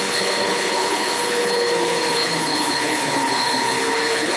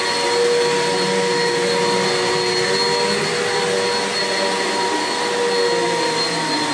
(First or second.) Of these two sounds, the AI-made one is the first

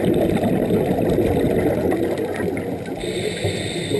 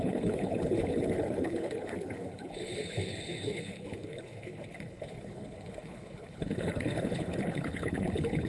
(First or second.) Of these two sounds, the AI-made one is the second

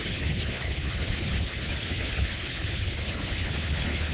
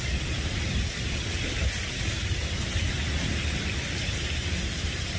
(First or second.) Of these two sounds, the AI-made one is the first